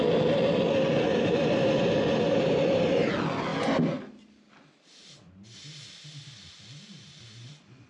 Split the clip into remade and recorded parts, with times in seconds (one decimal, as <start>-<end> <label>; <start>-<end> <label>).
0.0-1.1 recorded; 1.1-3.1 remade; 3.1-7.9 recorded